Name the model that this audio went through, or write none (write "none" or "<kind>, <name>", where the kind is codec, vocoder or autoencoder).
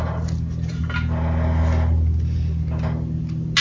none